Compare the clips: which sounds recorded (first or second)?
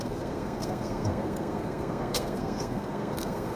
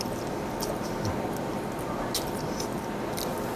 second